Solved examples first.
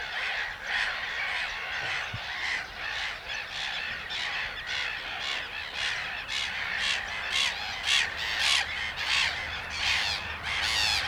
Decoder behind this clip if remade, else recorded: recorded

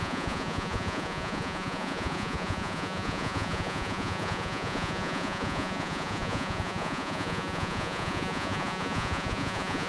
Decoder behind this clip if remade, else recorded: remade, vocoder, Vocos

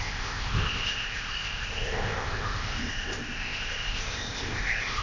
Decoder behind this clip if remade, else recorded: remade, codec, ZipCodec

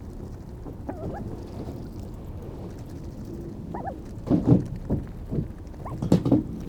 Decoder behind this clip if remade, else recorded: recorded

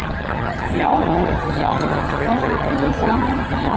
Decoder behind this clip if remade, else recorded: remade, vocoder, HiFi-GAN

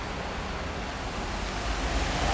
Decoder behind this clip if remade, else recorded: recorded